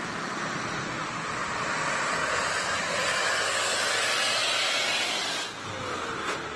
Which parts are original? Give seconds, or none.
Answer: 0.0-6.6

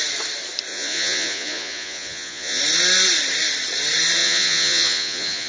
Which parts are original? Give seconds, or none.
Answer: 0.0-0.7; 2.6-4.2

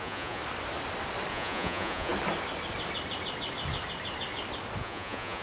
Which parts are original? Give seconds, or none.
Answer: 0.4-1.3; 2.1-4.8

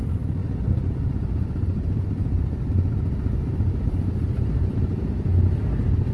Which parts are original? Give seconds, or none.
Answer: none